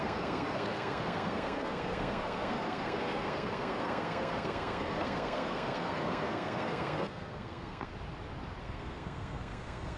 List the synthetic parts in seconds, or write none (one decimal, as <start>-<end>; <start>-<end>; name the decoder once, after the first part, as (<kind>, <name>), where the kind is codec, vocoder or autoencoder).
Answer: 0.0-7.9 (codec, SNAC); 8.6-10.0